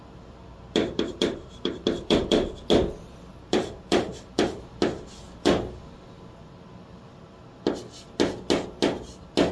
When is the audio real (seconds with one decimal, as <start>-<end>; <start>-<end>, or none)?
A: 0.0-0.8; 2.5-3.3; 4.6-9.5